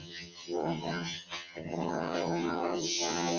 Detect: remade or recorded remade